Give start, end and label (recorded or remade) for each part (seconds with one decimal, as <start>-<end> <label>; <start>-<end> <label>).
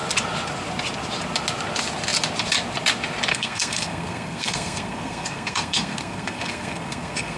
0.0-3.3 recorded; 3.3-7.4 remade